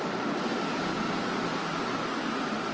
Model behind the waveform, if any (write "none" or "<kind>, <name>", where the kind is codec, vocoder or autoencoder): none